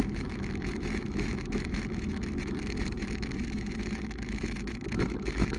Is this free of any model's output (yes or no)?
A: no